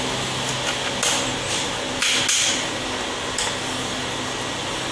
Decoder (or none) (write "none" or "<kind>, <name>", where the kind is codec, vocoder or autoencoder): none